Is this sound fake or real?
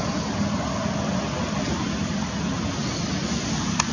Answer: real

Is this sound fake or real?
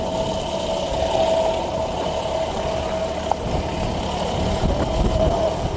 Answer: real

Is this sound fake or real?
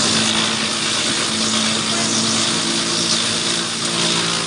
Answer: real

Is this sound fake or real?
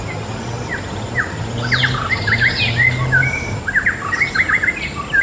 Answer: real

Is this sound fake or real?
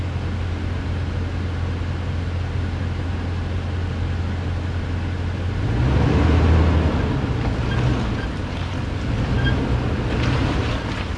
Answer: real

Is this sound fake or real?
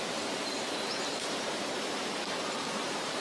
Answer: fake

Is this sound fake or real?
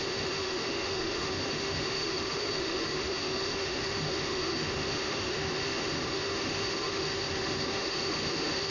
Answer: fake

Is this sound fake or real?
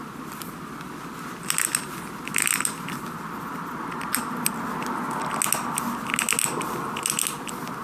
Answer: real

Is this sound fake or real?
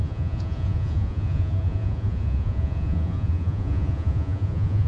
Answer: fake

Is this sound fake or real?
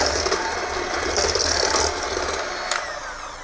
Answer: real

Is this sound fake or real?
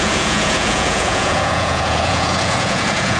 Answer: fake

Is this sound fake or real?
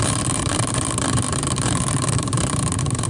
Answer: fake